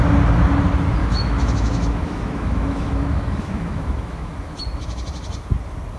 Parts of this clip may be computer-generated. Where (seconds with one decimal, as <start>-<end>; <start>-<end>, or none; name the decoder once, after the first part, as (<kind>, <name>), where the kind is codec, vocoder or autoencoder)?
1.0-4.6 (autoencoder, DAC-VAE)